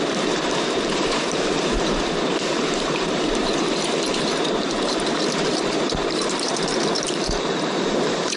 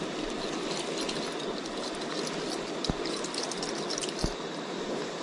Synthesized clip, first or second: first